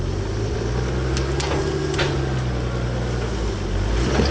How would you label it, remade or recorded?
recorded